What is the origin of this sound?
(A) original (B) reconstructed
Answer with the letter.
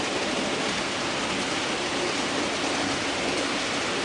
A